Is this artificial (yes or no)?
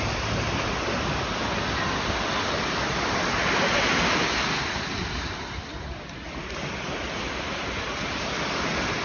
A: no